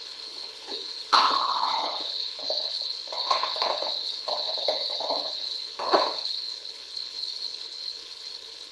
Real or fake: fake